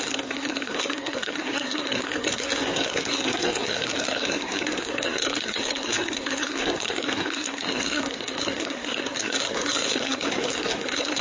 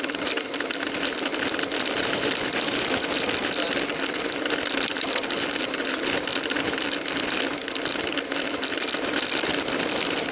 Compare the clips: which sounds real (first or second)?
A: second